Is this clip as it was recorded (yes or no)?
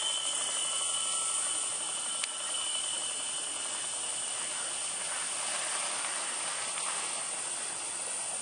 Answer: yes